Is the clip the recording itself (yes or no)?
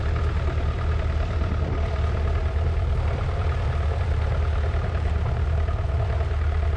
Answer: no